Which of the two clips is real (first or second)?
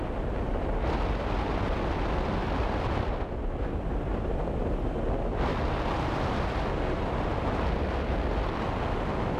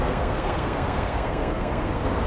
first